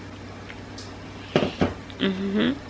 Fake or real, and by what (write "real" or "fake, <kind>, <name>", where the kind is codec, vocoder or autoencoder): real